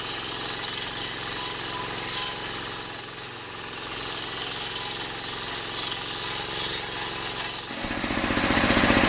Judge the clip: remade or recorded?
recorded